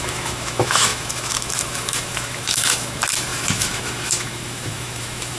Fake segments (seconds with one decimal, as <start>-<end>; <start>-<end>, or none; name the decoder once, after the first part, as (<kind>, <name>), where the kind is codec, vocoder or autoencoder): 0.0-5.4 (autoencoder, DAC-VAE)